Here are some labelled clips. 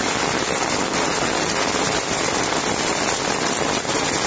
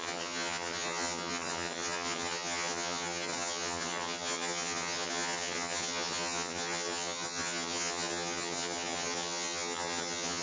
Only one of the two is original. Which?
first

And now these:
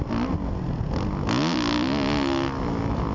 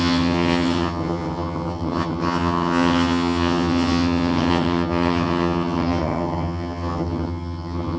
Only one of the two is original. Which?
first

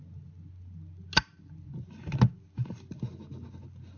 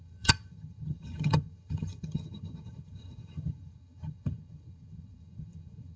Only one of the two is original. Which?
first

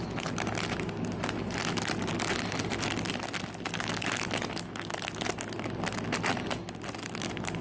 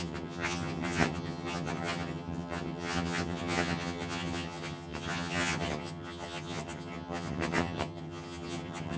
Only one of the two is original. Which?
first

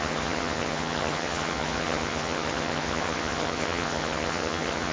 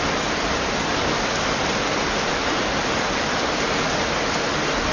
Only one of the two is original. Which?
second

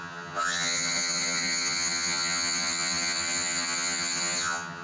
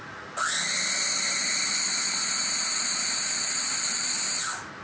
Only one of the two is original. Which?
second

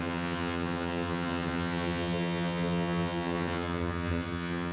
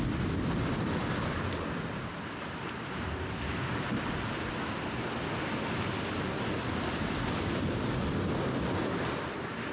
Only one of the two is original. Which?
second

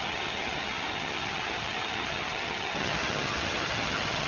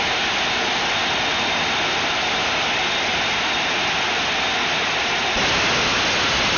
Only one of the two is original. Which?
second